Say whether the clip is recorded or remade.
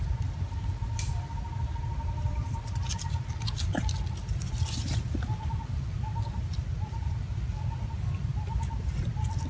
recorded